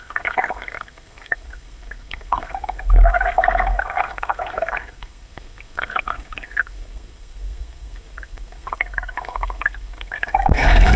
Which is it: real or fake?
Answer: fake